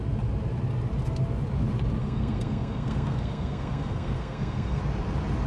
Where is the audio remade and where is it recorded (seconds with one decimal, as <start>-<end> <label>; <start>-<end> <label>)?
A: 0.0-2.0 recorded; 2.0-4.8 remade; 4.8-5.5 recorded